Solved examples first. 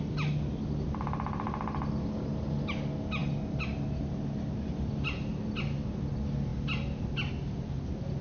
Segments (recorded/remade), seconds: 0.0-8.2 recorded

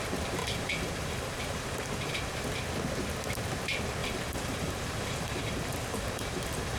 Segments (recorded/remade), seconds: 0.0-0.4 recorded; 0.4-2.3 remade; 2.3-4.0 recorded; 4.0-6.8 remade

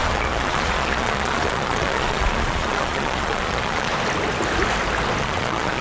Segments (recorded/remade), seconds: 0.0-3.9 remade; 3.9-5.2 recorded; 5.2-5.8 remade

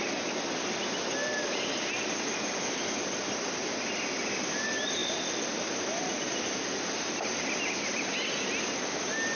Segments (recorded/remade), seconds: 0.0-9.4 recorded

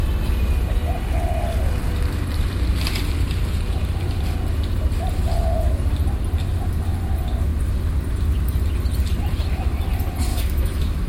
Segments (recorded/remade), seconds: 0.0-10.3 recorded; 10.3-11.1 remade

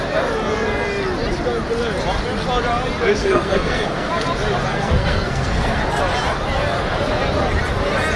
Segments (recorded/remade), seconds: 0.0-3.2 recorded; 3.2-4.1 remade; 4.1-4.7 recorded; 4.7-5.8 remade; 5.8-8.2 recorded

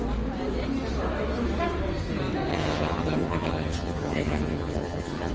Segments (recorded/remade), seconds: 0.0-2.5 recorded; 2.5-5.3 remade

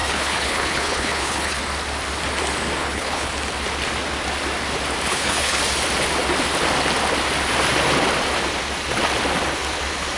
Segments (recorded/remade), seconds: 0.0-1.6 remade; 1.6-2.8 recorded; 2.8-3.3 remade; 3.3-5.1 recorded; 5.1-5.6 remade; 5.6-10.2 recorded